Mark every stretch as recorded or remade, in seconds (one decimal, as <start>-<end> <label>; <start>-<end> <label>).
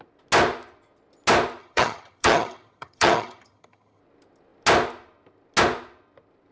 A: 0.0-1.6 recorded; 1.6-4.0 remade; 4.0-6.5 recorded